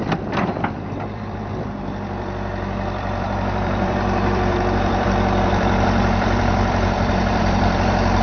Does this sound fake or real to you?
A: fake